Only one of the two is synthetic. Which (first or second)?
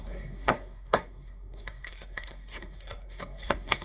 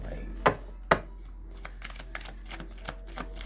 first